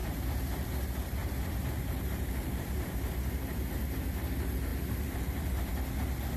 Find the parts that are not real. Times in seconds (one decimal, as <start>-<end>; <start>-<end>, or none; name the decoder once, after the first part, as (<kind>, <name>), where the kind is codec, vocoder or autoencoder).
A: 0.0-0.7 (vocoder, BigVGAN v2); 1.2-3.1; 4.7-5.7